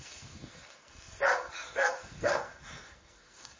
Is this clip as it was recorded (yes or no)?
no